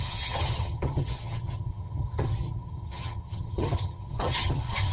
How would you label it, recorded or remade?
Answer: remade